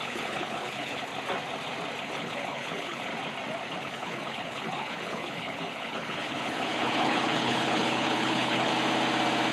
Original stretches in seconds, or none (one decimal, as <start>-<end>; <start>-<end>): 1.1-2.0; 3.1-3.8; 8.7-9.5